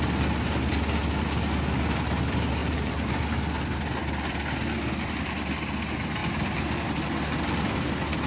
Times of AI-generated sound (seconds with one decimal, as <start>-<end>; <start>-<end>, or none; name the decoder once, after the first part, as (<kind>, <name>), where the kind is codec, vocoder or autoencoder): 2.6-3.2 (vocoder, BigVGAN v2); 6.2-6.8